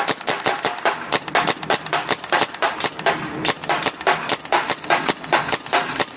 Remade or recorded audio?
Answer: recorded